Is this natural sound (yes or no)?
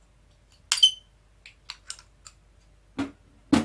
yes